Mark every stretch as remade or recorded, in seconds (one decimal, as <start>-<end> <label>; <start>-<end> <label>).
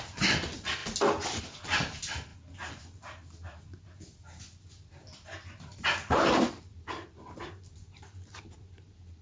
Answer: 0.0-9.2 recorded